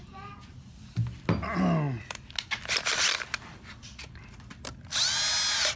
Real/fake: real